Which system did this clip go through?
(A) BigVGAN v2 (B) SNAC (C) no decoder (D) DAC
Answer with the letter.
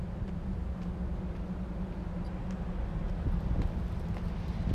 C